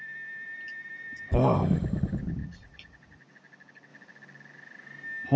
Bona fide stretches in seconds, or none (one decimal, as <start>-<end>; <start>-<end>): 0.0-2.4; 3.3-5.4